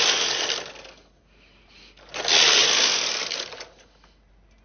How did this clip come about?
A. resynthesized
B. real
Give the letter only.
B